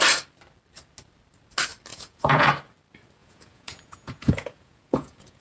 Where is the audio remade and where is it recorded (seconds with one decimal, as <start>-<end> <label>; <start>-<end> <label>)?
0.0-1.9 recorded; 1.9-2.5 remade; 2.5-3.2 recorded; 3.2-5.4 remade